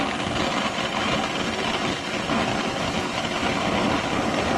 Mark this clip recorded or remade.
recorded